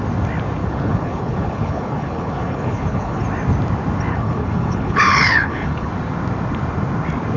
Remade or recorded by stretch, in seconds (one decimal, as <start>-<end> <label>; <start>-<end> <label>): 0.0-0.6 recorded; 0.6-3.2 remade; 3.2-4.1 recorded; 4.1-5.9 remade; 5.9-7.4 recorded